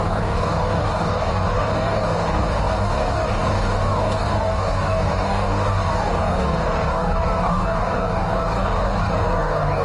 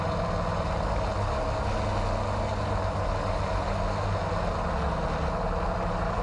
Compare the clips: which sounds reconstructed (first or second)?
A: first